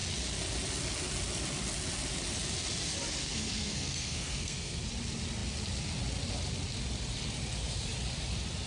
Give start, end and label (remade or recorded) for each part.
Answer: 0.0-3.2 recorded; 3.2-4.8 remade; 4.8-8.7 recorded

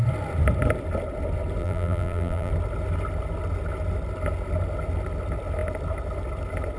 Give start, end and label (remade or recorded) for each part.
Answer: 0.0-1.6 recorded; 1.6-2.5 remade; 2.5-6.8 recorded

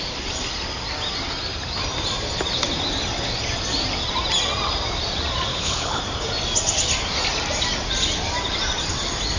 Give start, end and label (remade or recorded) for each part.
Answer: 0.0-5.5 recorded; 5.5-6.0 remade; 6.0-9.4 recorded

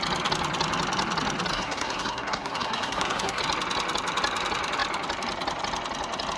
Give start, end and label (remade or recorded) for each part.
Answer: 0.0-1.5 recorded; 1.5-3.4 remade; 3.4-6.4 recorded

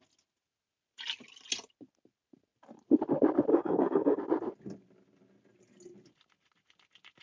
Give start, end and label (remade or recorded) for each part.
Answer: 0.0-3.5 recorded; 3.5-4.2 remade; 4.2-7.2 recorded